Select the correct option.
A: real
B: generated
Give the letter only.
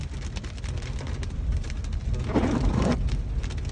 A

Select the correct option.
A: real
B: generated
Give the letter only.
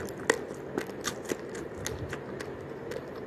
A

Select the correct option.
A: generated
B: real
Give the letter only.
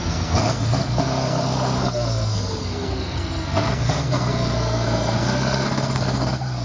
A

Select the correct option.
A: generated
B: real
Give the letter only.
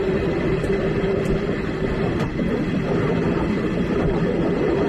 B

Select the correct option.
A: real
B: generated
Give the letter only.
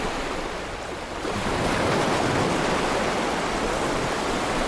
A